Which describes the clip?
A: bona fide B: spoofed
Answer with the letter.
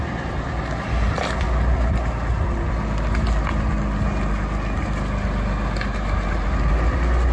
A